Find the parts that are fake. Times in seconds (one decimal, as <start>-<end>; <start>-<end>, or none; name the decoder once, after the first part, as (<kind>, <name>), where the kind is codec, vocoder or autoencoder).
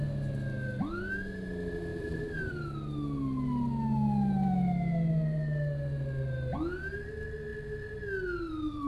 1.9-2.5 (vocoder, BigVGAN v2)